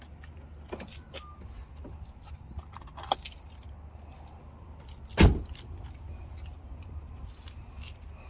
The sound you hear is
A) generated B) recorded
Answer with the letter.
B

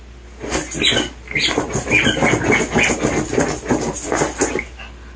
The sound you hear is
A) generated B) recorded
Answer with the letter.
B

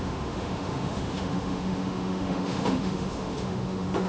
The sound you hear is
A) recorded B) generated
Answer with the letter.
B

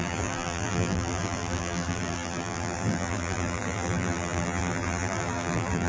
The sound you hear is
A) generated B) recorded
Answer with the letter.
A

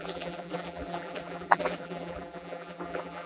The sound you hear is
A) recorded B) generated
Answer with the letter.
B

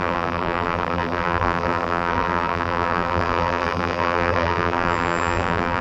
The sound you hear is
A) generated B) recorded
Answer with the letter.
A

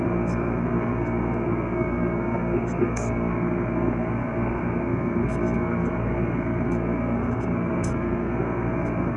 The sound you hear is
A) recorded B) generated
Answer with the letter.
B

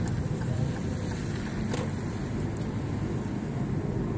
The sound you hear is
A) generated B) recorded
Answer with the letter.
B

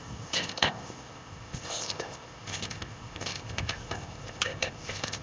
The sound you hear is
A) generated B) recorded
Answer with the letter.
A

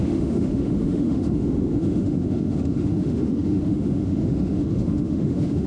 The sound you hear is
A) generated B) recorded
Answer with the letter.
A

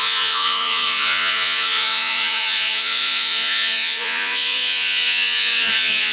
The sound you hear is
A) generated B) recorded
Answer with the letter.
A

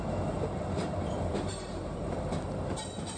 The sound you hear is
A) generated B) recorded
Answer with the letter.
A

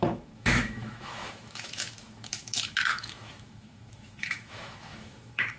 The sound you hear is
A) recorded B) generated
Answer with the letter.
B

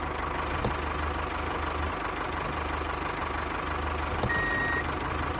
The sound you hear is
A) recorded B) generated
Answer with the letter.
A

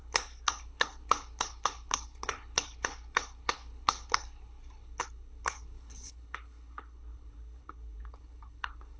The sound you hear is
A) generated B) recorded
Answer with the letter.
A